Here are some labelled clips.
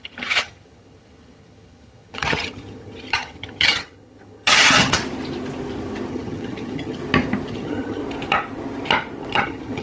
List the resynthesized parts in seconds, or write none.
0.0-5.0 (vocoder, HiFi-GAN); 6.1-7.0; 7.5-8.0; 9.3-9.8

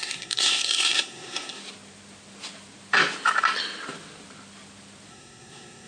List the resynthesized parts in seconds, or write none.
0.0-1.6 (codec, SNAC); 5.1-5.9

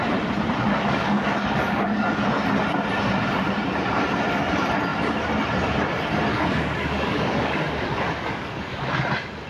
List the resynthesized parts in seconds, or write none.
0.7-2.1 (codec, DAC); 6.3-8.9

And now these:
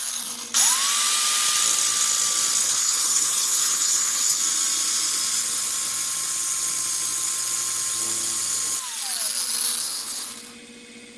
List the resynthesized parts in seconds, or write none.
2.6-4.4 (codec, HILCodec); 9.8-10.3